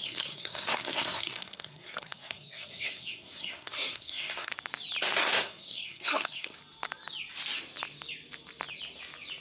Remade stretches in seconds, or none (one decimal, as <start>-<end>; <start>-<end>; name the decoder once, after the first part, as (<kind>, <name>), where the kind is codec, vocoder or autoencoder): 0.0-4.5 (codec, SNAC); 5.2-6.6